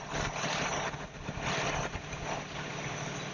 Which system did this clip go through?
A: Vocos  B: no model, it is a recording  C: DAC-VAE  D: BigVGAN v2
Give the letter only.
B